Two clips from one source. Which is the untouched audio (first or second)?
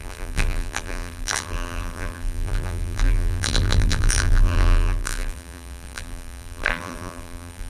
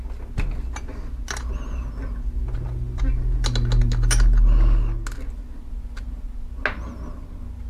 second